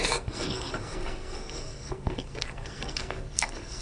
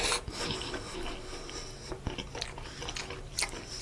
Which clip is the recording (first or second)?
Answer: second